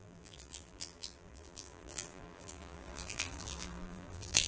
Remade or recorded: remade